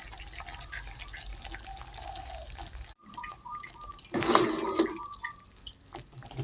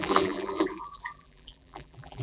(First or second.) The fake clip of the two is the second